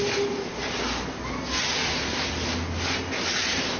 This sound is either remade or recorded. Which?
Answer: recorded